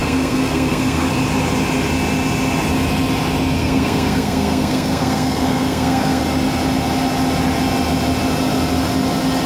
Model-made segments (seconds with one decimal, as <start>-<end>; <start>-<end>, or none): 0.0-1.1; 3.6-6.2